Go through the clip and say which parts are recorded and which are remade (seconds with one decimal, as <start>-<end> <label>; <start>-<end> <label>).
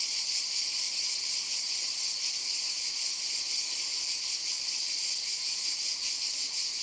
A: 0.0-2.4 recorded; 2.4-4.0 remade; 4.0-5.1 recorded; 5.1-6.8 remade